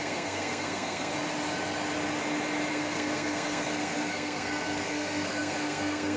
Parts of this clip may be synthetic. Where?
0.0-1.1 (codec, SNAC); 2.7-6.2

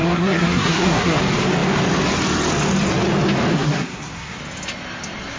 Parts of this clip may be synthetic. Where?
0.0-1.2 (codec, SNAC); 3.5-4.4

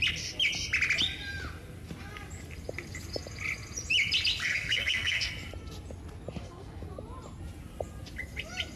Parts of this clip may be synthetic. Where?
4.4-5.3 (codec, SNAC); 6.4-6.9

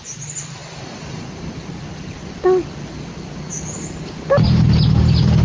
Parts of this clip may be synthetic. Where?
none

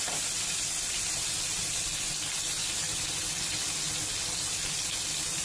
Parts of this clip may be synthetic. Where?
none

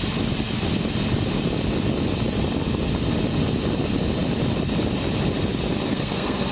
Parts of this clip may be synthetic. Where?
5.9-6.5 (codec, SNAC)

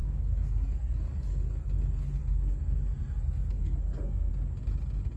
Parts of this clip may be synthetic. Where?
0.0-1.8 (codec, SNAC); 2.2-4.3

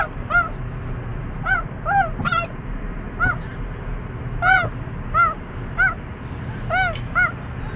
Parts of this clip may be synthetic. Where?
none